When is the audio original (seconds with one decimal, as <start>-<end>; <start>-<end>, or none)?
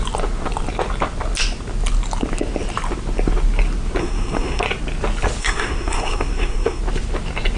0.0-4.0; 4.6-5.4; 6.8-7.6